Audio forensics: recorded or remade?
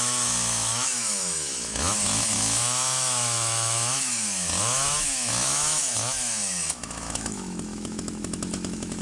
remade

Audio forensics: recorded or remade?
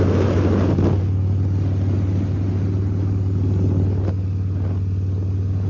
recorded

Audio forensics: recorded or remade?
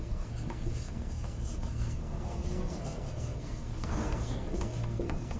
remade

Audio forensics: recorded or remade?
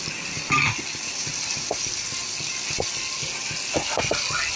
recorded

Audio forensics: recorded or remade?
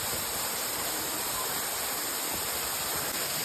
recorded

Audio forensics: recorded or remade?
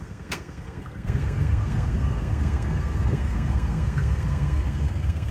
remade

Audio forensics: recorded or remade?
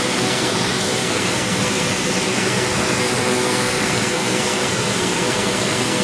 remade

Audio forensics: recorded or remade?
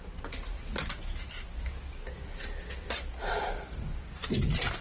recorded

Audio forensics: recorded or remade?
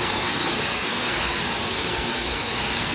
remade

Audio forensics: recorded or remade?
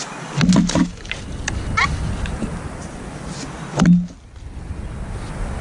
recorded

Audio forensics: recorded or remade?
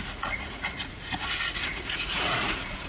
remade